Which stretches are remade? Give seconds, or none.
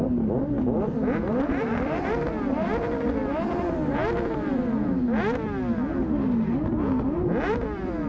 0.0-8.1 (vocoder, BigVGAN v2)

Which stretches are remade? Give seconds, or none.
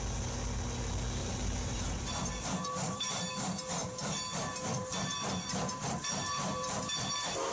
1.2-3.2 (vocoder, BigVGAN v2); 3.8-7.5